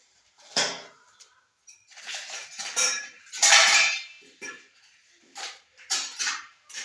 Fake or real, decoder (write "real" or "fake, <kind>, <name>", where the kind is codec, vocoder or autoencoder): fake, vocoder, BigVGAN v2